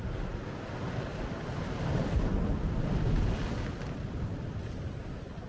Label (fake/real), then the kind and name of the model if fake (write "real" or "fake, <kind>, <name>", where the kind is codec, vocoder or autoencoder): real